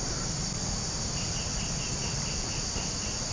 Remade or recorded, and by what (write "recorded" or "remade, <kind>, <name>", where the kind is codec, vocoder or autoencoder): recorded